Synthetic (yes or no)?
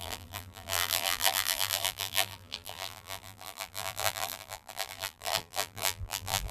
yes